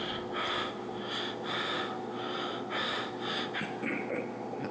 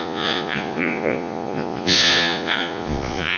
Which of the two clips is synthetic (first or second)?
second